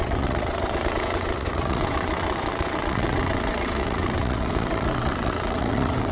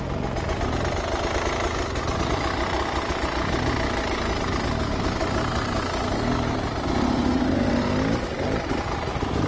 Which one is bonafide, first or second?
second